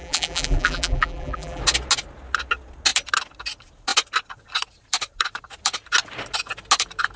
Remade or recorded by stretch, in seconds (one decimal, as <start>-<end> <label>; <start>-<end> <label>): 0.0-1.6 remade; 1.6-7.2 recorded